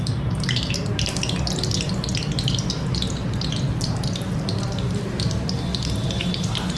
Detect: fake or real real